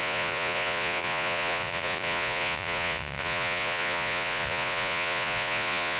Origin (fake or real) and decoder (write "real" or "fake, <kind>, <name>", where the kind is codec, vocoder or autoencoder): fake, vocoder, Vocos